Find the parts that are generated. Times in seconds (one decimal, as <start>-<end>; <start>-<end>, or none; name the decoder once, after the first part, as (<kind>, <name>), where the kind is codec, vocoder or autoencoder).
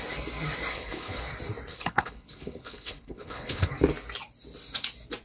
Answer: 0.7-1.2 (codec, HILCodec); 1.7-3.7